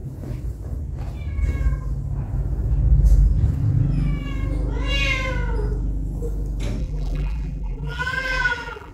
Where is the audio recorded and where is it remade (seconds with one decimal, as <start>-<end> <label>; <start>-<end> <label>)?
0.0-6.8 recorded; 6.8-8.9 remade